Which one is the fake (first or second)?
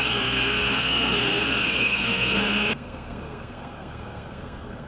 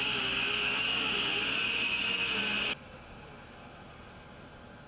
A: first